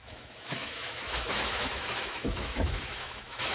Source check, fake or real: fake